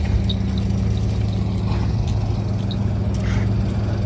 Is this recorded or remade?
recorded